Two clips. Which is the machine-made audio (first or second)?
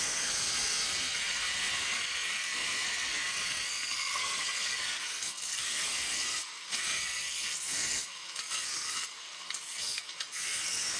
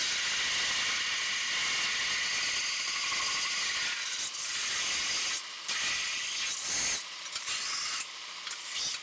first